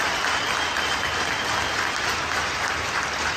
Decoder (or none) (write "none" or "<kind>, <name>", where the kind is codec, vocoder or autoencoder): none